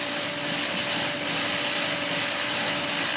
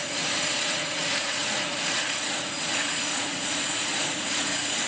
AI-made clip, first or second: second